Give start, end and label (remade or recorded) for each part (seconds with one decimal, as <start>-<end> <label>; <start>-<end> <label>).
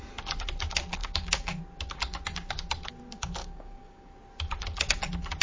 0.0-1.0 recorded; 1.0-1.6 remade; 1.6-3.4 recorded; 3.4-4.1 remade; 4.1-5.4 recorded